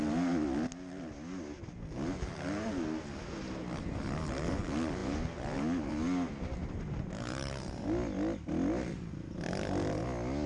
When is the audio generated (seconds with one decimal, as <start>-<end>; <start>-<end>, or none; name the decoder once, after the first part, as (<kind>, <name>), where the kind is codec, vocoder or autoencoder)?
6.6-7.8 (vocoder, BigVGAN v2)